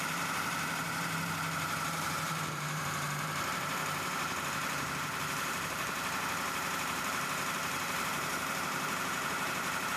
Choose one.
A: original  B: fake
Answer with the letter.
B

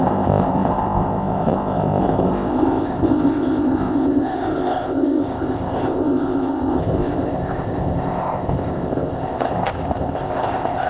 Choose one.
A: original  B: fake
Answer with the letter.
B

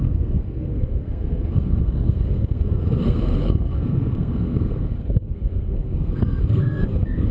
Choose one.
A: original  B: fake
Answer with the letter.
B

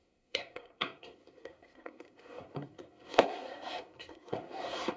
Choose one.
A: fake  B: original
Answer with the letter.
A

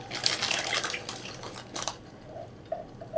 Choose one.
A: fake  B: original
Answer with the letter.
B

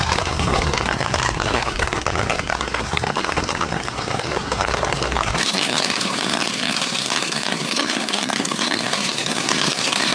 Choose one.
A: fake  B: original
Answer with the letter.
A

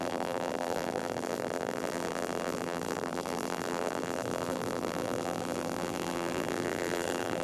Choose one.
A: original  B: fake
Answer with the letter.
B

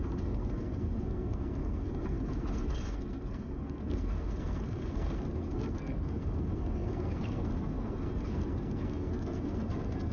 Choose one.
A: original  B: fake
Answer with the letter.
B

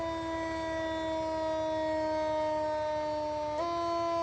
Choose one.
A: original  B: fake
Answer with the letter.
A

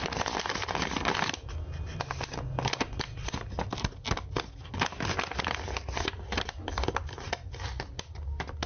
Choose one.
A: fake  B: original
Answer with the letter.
B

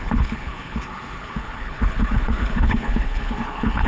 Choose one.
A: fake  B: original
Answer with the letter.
A